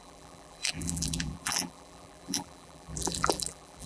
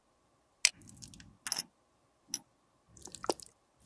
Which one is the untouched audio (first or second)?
second